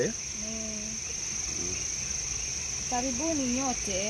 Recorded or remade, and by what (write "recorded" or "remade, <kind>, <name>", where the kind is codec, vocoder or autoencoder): recorded